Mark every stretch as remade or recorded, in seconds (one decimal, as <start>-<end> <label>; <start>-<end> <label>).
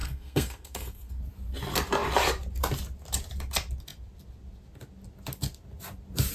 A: 0.0-1.2 remade; 1.2-6.3 recorded